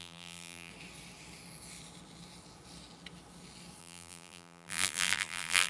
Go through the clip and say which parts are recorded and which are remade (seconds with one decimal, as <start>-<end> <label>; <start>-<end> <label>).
0.0-0.7 remade; 0.7-3.8 recorded; 3.8-5.7 remade